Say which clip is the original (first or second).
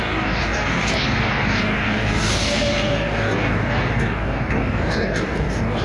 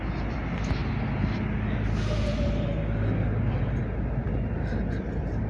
second